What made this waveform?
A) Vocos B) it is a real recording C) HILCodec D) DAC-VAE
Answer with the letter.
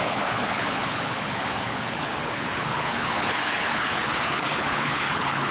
C